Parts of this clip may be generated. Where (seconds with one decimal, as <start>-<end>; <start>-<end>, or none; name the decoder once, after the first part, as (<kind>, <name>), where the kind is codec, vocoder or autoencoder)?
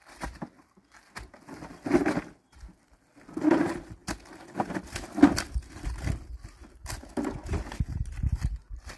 none